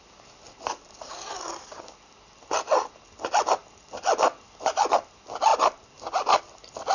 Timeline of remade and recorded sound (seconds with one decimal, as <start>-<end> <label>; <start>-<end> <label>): 0.0-6.9 recorded